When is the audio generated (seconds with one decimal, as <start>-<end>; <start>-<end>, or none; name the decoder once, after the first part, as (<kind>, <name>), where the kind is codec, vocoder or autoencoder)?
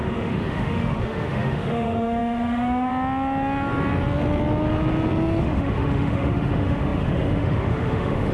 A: 0.0-2.9 (autoencoder, DAC-VAE); 5.4-8.3